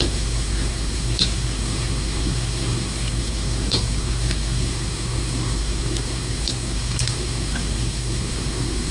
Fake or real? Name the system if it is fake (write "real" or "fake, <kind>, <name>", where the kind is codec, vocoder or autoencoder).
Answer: fake, codec, SNAC